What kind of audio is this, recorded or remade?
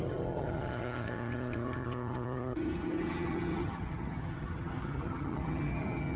remade